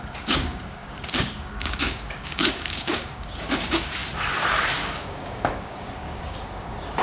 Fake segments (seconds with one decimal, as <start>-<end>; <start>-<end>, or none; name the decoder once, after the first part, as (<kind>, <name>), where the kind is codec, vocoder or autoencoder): 0.0-4.0 (codec, DAC); 4.7-7.0